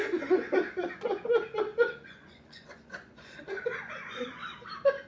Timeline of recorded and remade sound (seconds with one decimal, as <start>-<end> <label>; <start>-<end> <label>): 0.0-4.4 remade; 4.4-5.1 recorded